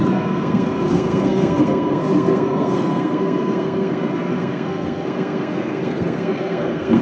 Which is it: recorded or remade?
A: remade